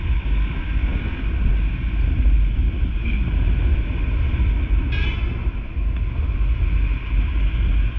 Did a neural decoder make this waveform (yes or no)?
no